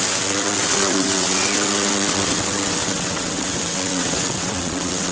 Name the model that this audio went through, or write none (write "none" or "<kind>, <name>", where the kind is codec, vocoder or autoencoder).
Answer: vocoder, WaveNeXt